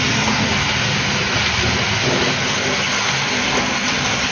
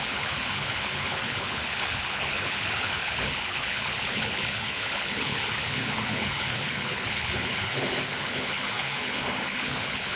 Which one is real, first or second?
first